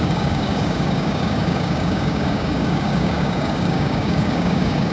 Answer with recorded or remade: remade